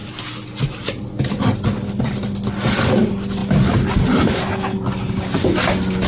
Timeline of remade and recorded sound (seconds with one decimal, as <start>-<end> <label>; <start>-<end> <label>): 0.0-6.1 recorded